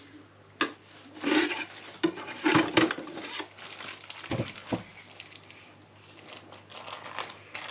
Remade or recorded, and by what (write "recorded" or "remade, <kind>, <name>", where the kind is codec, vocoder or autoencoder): recorded